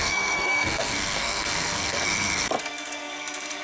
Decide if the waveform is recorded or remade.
remade